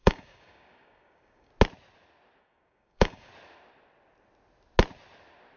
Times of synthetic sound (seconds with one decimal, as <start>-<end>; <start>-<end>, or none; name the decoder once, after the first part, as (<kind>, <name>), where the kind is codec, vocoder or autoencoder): 0.0-1.5 (codec, DAC); 2.4-3.3